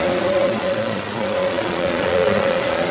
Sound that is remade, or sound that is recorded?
remade